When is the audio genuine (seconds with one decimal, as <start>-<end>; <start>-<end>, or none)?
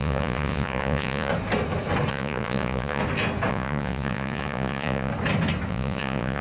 1.3-2.1; 3.0-3.5; 5.1-5.7